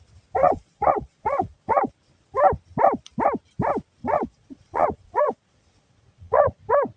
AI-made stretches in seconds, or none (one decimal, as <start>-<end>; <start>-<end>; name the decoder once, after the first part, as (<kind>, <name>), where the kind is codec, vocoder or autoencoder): 0.4-1.9 (vocoder, Vocos); 4.0-6.6